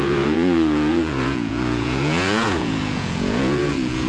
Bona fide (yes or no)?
no